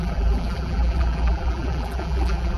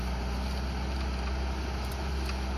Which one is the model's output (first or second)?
first